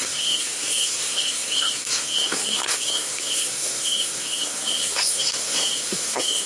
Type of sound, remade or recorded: remade